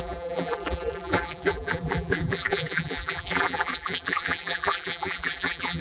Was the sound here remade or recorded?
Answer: remade